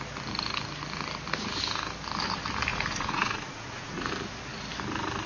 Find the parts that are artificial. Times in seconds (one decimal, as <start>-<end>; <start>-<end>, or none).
2.7-4.1